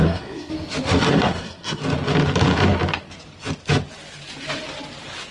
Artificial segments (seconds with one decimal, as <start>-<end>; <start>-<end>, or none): 0.0-0.5; 1.1-1.8

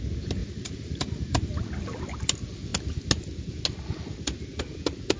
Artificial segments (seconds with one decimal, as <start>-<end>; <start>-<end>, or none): 0.4-1.5

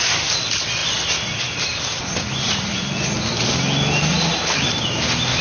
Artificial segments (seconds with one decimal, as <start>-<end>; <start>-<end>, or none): none

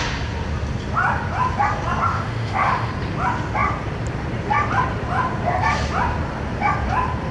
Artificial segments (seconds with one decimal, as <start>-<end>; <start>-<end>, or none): 2.1-2.9

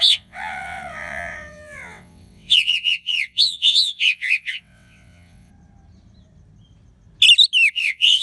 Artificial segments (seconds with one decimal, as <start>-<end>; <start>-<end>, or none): 0.0-5.5; 7.7-8.2

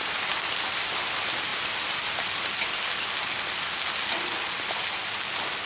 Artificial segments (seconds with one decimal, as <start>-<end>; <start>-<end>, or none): none

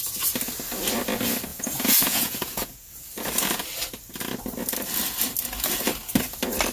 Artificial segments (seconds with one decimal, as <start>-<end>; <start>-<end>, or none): 1.5-3.0